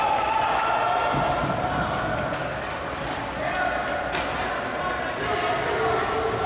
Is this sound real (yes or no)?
yes